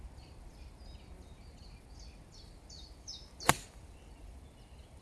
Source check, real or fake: real